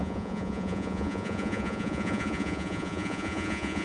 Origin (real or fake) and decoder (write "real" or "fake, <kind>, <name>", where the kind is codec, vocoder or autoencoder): fake, vocoder, Vocos